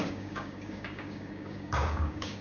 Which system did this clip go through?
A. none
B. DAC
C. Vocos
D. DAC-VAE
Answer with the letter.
B